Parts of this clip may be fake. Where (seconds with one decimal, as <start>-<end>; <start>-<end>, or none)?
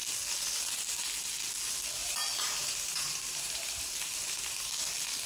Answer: 2.0-4.8